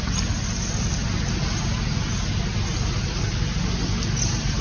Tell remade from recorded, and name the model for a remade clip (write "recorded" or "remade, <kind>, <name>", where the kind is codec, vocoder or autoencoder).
recorded